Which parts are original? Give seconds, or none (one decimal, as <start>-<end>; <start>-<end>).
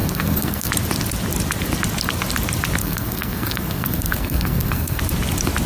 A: 0.7-2.8; 5.0-5.7